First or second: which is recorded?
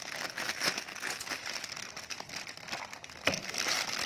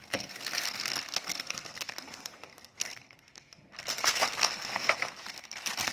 first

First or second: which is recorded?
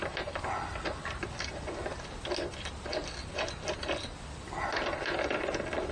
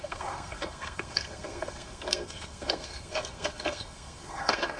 first